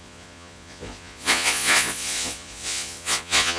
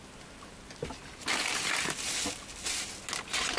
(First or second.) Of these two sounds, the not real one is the first